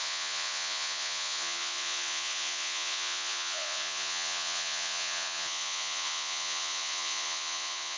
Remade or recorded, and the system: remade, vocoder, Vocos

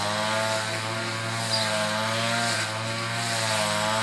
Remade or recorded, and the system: recorded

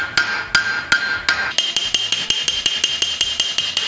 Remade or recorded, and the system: recorded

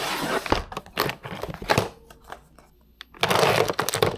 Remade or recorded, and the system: recorded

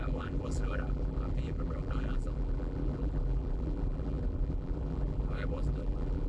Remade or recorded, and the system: remade, vocoder, BigVGAN v2